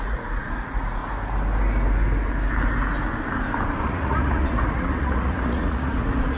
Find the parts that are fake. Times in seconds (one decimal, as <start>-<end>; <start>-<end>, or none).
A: 0.0-1.0; 3.8-6.4